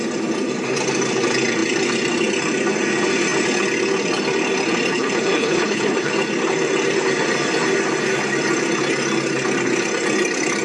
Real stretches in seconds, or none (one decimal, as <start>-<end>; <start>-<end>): 0.0-4.9; 6.1-10.6